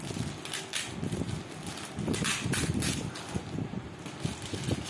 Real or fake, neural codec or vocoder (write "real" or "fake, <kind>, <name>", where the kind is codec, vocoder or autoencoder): real